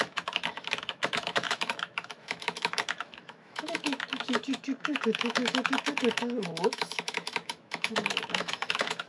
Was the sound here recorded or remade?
remade